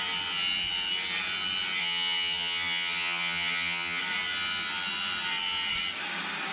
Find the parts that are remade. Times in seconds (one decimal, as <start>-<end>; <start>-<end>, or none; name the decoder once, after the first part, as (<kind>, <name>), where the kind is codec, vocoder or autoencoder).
1.8-4.0 (vocoder, HiFi-GAN)